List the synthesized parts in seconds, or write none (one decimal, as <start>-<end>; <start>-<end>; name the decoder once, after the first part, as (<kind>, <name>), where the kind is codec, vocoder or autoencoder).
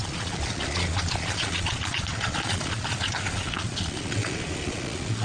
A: 0.0-5.2 (vocoder, Vocos)